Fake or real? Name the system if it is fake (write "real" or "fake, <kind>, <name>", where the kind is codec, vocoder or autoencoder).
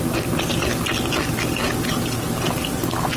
real